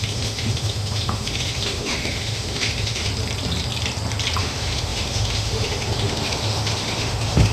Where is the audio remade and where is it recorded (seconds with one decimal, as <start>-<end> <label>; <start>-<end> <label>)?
0.0-3.1 remade; 3.1-4.4 recorded; 4.4-7.5 remade